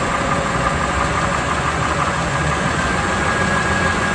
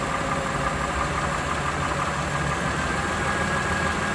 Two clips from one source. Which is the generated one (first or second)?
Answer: first